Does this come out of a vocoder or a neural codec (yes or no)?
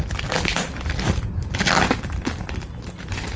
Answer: no